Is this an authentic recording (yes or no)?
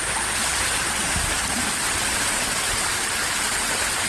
yes